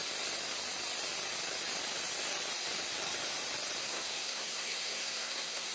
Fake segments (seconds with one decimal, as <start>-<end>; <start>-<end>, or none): 3.8-5.7